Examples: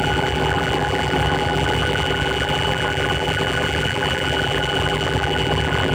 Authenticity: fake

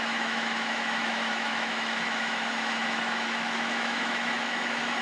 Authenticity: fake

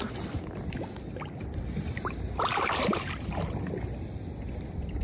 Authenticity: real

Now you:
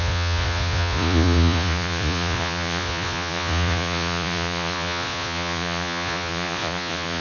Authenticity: fake